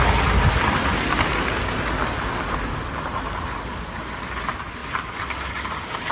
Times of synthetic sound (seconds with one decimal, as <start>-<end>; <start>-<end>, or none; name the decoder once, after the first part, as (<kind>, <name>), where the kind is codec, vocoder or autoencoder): none